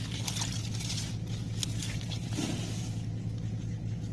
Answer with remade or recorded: recorded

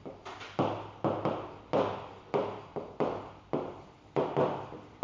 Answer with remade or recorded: recorded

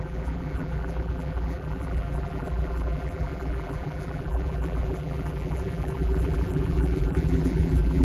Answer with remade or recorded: remade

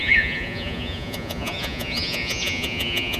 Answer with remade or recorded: remade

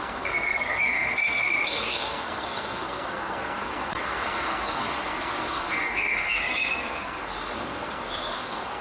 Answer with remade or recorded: remade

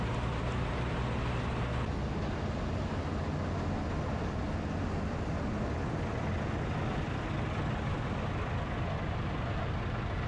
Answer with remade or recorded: recorded